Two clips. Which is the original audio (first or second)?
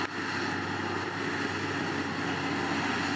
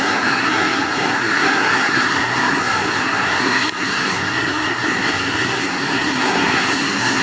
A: first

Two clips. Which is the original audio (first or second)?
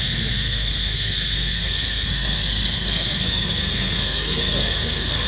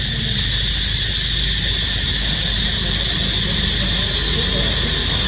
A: second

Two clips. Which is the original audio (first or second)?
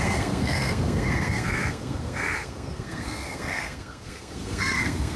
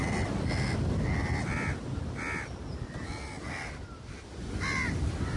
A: second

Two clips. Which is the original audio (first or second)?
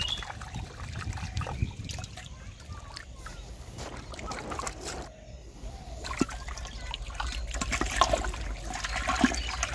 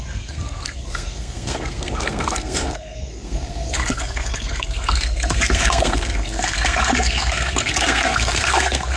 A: first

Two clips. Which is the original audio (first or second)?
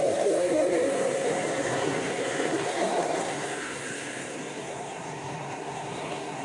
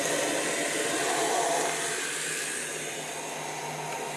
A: second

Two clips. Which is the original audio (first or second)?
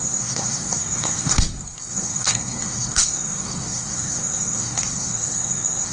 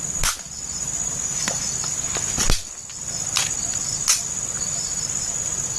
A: second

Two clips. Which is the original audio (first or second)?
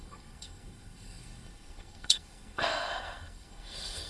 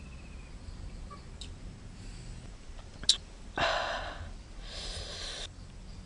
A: second